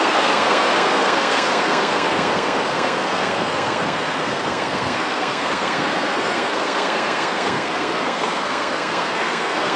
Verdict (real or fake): fake